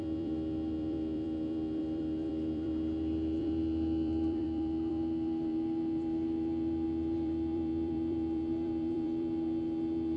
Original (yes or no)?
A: no